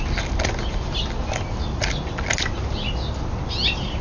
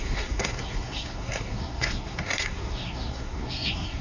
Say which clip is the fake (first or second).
second